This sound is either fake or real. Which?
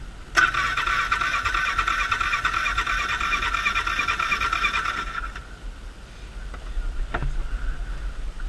real